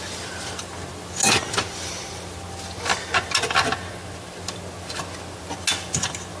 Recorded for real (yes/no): yes